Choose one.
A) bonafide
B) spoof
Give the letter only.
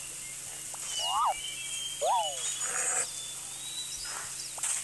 A